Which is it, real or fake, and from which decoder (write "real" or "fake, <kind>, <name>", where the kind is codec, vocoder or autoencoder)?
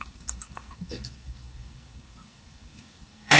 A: fake, codec, SNAC